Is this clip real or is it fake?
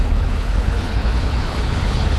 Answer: fake